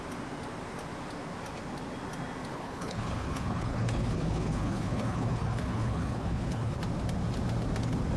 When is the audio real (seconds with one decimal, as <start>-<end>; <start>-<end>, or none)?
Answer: 0.0-2.5; 6.8-8.2